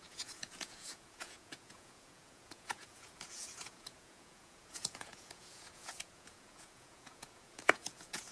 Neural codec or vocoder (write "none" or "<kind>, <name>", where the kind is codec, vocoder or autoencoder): vocoder, Vocos